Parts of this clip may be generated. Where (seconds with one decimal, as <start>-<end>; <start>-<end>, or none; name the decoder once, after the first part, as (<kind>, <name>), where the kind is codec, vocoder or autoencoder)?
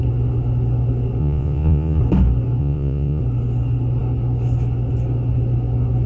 1.2-2.0 (vocoder, Vocos); 2.6-3.2